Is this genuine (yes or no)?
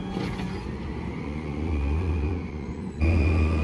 no